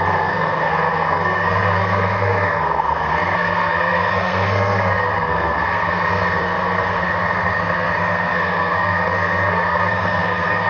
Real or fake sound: fake